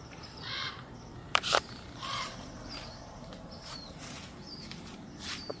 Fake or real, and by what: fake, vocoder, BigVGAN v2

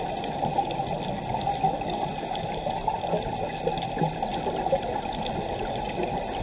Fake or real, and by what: real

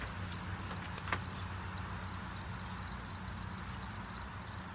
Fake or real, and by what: real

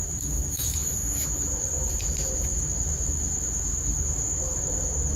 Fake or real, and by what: fake, autoencoder, DAC-VAE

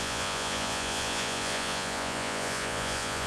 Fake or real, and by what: fake, vocoder, Vocos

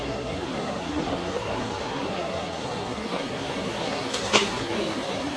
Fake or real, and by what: fake, codec, SNAC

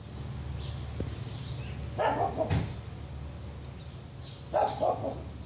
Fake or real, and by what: real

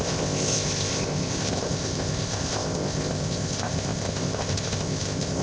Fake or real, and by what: fake, codec, ZipCodec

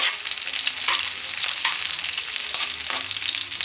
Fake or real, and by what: real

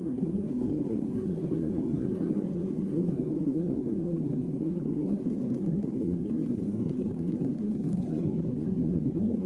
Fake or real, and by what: fake, codec, SNAC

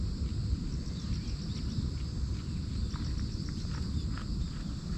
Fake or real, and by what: real